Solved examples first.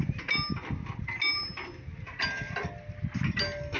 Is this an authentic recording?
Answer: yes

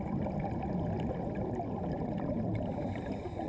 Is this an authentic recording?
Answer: yes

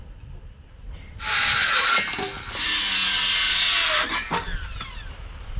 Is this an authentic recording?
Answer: yes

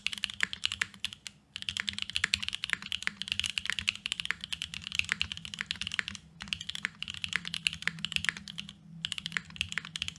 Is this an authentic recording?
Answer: yes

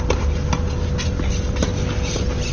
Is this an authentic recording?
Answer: yes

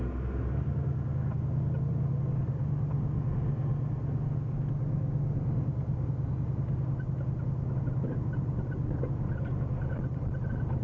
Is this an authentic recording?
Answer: yes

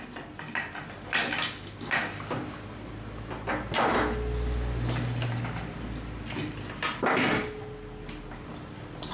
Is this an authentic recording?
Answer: yes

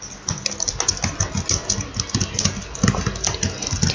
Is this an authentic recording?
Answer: yes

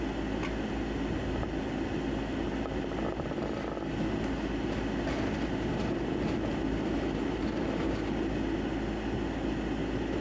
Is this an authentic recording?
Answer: yes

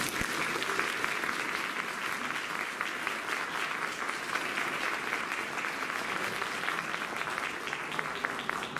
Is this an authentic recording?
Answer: yes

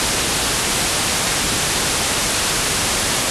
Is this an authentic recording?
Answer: yes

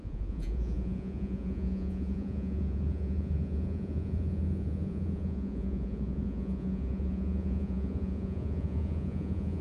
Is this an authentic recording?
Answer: no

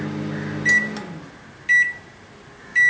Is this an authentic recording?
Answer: yes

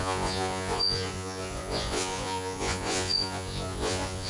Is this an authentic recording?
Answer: no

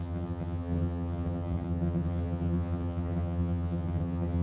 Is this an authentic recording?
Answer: no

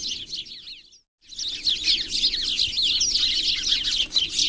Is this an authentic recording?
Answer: yes